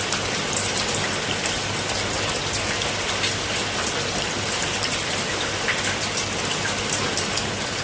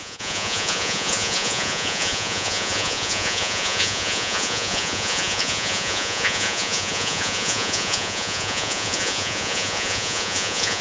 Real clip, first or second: first